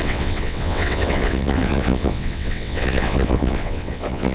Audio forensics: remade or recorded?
remade